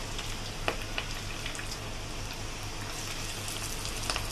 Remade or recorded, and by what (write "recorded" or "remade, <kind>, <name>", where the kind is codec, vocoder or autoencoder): recorded